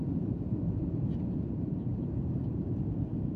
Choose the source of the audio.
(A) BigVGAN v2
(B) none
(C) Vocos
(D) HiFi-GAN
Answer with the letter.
A